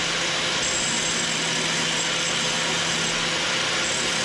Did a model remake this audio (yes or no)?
no